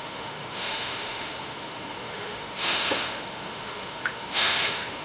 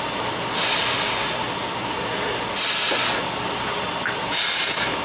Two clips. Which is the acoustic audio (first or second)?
second